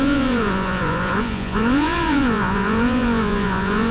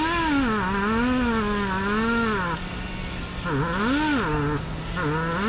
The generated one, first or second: first